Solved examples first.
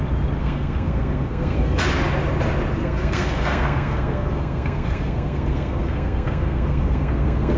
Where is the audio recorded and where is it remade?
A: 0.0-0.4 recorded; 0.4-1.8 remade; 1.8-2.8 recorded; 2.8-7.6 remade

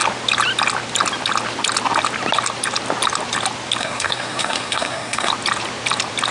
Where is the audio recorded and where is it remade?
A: 0.0-3.8 recorded; 3.8-5.3 remade; 5.3-6.3 recorded

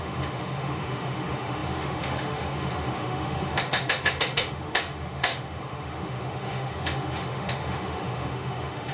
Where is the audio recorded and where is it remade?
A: 0.0-8.9 remade

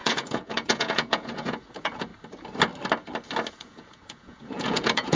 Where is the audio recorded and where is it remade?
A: 0.0-2.1 remade; 2.1-3.5 recorded; 3.5-5.2 remade